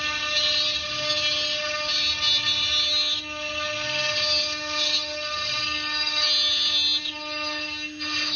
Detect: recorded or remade recorded